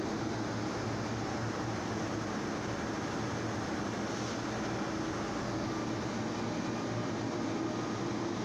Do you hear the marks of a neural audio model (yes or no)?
no